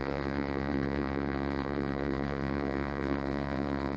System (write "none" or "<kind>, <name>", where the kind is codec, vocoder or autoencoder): vocoder, Vocos